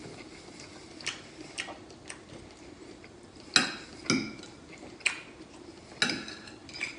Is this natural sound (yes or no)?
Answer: yes